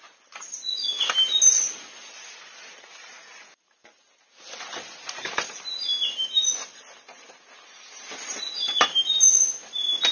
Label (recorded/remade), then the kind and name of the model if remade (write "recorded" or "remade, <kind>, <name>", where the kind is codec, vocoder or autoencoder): recorded